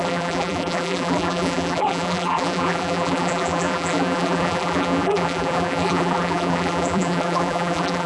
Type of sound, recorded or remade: remade